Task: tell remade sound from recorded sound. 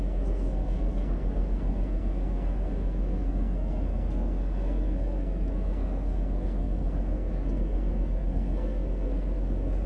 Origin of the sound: remade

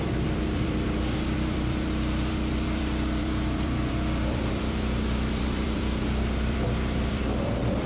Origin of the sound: remade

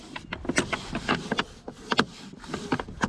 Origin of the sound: recorded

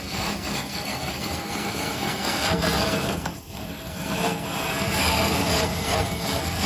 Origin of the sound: remade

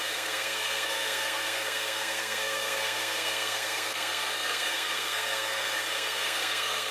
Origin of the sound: remade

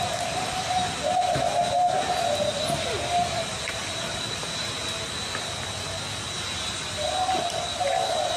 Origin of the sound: recorded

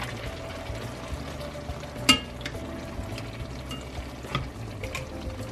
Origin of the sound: recorded